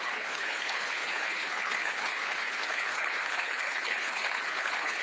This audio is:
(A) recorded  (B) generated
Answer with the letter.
B